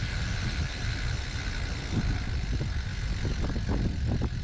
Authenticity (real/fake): real